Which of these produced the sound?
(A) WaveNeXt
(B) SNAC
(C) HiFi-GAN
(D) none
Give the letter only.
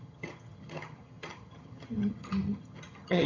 C